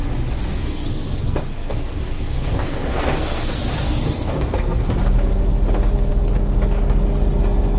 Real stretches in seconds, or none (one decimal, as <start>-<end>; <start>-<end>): 0.0-0.5; 5.0-7.8